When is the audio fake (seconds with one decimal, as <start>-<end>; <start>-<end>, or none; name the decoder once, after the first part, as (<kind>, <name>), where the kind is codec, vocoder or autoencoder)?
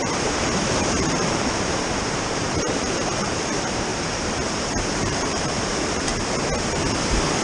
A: 0.0-3.9 (vocoder, BigVGAN v2); 4.5-6.1